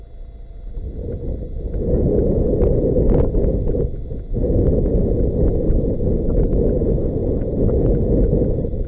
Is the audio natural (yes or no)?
yes